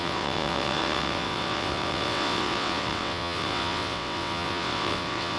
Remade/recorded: remade